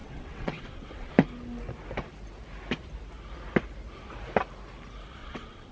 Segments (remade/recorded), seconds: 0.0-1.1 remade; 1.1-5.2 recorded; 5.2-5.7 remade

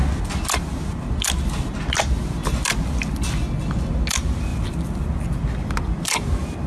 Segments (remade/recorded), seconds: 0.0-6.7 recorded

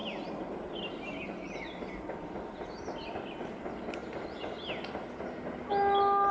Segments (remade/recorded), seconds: 0.0-3.8 remade; 3.8-4.4 recorded; 4.4-5.6 remade; 5.6-6.3 recorded